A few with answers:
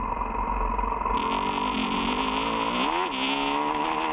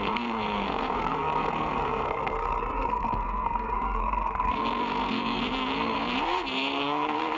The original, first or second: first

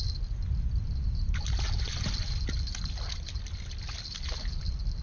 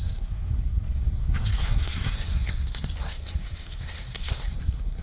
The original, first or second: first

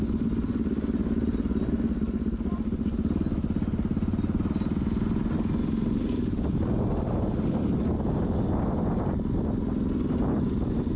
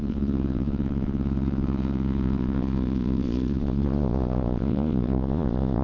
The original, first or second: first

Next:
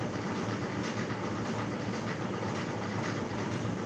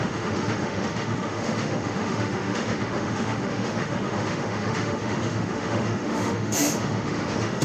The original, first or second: first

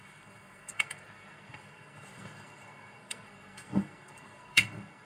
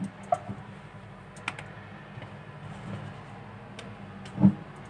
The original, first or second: second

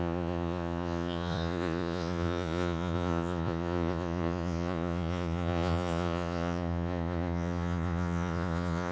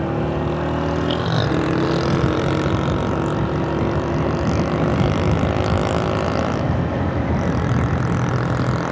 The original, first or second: second